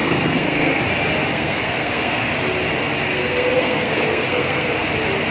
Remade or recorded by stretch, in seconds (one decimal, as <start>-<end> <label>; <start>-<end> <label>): 0.0-0.8 remade; 0.8-1.3 recorded; 1.3-2.2 remade; 2.2-3.1 recorded; 3.1-4.7 remade; 4.7-5.3 recorded